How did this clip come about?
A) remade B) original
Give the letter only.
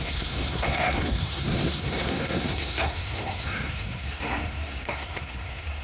A